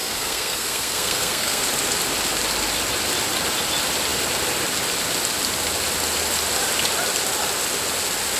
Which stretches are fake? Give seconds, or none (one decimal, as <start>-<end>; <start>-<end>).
0.0-1.6